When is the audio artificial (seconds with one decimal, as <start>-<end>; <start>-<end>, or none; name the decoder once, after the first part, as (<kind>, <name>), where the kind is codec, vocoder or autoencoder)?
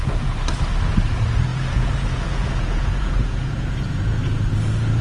1.5-4.5 (vocoder, Vocos)